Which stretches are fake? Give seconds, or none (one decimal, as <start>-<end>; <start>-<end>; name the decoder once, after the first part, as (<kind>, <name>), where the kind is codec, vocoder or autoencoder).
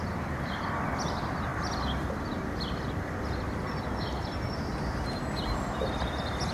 none